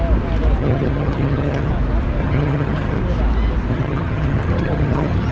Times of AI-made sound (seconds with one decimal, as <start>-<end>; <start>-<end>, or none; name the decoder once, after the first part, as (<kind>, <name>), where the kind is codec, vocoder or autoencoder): 0.6-1.7 (vocoder, HiFi-GAN); 2.2-3.0; 3.7-5.3